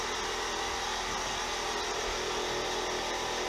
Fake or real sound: real